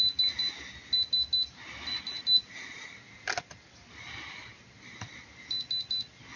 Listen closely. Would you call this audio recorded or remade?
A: recorded